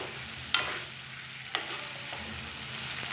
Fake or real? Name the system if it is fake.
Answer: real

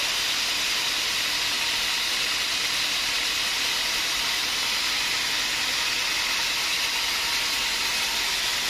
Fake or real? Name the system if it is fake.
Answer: real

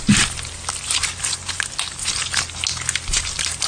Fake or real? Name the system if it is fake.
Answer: real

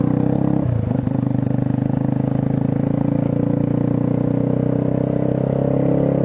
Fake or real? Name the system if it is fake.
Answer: real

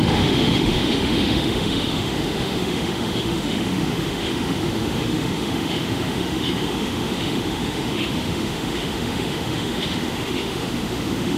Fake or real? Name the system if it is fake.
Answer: fake, autoencoder, DAC-VAE